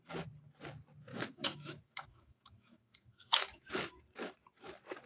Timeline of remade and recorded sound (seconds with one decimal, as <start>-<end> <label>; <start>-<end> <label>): 0.0-1.1 recorded; 1.1-3.7 remade; 3.7-5.1 recorded